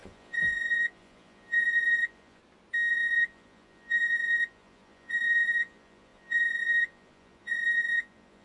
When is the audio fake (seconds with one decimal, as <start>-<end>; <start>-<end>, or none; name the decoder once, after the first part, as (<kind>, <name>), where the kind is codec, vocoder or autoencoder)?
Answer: 0.0-2.4 (vocoder, Vocos); 2.9-8.4